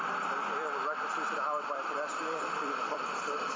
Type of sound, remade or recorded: remade